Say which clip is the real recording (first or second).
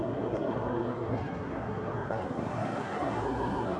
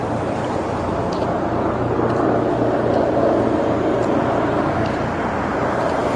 second